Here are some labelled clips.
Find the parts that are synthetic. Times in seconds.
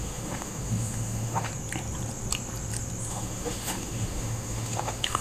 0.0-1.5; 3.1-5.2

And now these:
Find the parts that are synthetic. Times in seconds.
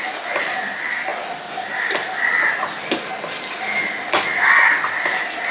none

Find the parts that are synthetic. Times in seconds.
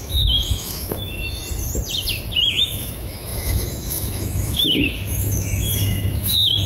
0.0-1.4; 2.5-6.7